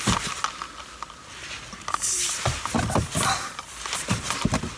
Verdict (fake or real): real